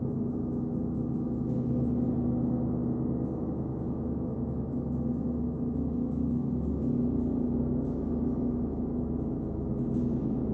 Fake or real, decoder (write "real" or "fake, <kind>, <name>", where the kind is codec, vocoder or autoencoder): fake, autoencoder, DAC-VAE